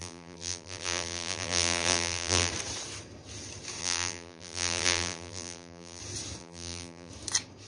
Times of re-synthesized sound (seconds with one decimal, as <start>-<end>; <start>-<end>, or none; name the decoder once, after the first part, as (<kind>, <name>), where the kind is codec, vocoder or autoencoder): 0.0-2.5 (vocoder, BigVGAN v2); 3.8-6.0; 6.4-7.1